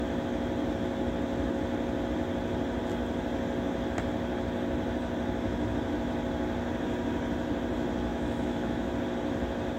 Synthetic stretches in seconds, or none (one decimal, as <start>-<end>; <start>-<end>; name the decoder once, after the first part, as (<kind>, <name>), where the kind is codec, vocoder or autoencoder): 8.1-8.9 (autoencoder, DAC-VAE)